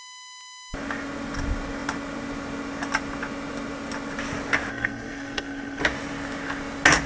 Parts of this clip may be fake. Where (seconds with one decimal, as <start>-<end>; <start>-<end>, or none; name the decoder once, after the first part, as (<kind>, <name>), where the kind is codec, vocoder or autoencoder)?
4.7-5.8 (codec, SNAC)

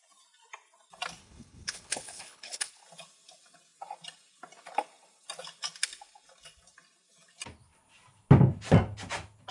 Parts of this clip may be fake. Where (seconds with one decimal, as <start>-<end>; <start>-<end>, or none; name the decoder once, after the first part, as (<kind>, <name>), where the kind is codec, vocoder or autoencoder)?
1.2-2.7 (codec, HILCodec)

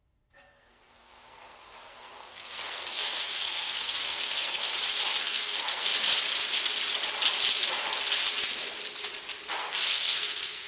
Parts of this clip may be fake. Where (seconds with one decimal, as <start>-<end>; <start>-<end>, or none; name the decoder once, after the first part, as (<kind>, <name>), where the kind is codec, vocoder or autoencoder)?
0.0-4.7 (codec, SNAC); 5.2-5.9; 9.6-10.7